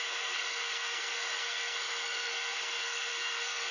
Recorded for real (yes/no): no